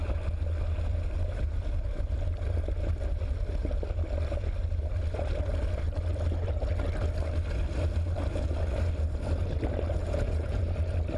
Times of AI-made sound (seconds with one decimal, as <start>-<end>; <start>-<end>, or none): 10.0-10.6

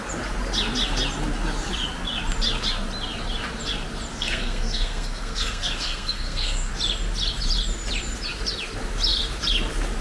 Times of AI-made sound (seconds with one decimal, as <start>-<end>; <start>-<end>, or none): 4.1-6.7

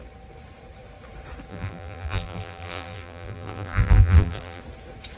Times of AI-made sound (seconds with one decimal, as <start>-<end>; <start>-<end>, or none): 1.5-4.6

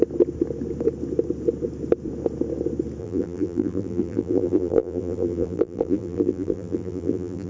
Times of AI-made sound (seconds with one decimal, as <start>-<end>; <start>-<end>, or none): 3.0-7.5

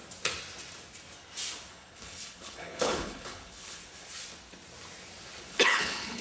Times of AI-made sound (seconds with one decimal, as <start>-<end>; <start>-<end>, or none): 1.7-3.8; 5.5-6.2

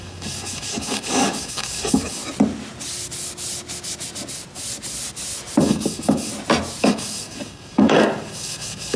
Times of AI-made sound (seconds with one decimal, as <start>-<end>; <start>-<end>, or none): 0.0-2.2; 5.6-6.3; 6.8-9.0